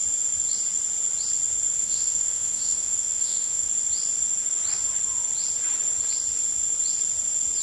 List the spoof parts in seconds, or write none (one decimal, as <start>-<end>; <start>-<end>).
1.8-3.7